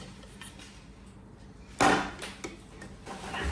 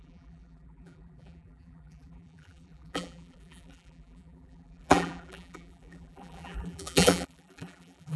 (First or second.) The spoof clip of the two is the second